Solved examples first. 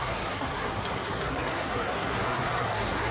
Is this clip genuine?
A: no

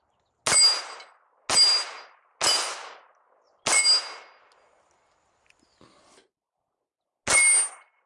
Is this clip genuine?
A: yes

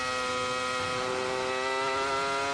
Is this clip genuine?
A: yes